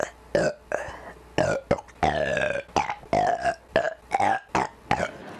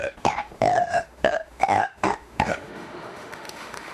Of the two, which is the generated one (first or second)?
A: second